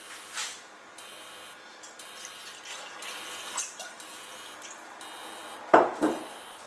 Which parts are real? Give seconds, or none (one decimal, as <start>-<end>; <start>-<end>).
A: 0.0-0.5; 2.2-2.7; 3.6-5.4